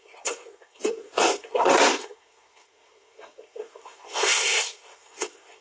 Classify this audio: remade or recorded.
remade